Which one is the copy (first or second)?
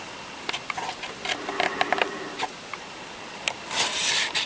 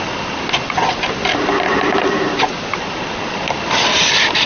second